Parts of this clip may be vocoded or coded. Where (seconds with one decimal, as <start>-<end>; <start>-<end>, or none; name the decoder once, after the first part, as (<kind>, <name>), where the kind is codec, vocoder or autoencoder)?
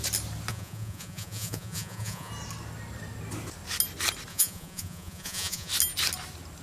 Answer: 0.5-2.3 (vocoder, Vocos); 4.3-5.7